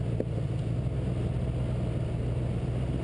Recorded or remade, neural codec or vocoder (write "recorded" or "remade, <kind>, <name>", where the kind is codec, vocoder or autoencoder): recorded